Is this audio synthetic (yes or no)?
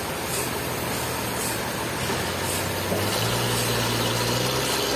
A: no